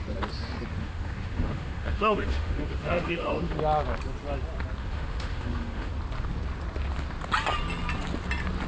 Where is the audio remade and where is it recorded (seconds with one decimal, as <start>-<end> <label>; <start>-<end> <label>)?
0.0-0.8 recorded; 0.8-3.6 remade; 3.6-4.8 recorded; 4.8-5.9 remade; 5.9-8.7 recorded